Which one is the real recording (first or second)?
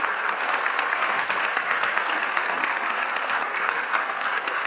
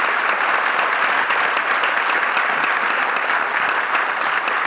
second